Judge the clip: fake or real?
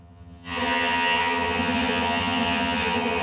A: fake